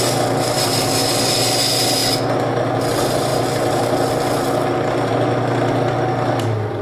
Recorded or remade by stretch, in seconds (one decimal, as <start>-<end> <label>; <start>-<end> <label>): 0.0-6.8 recorded